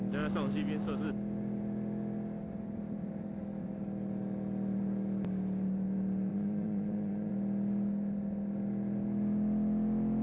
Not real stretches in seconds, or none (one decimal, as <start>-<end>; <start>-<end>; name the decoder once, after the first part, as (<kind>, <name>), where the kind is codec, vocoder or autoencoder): 6.3-7.3 (vocoder, Vocos)